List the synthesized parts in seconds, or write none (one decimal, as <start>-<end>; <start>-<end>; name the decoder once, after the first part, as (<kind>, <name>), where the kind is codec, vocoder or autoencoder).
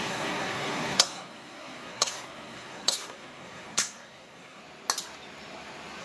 0.0-4.6 (codec, SNAC)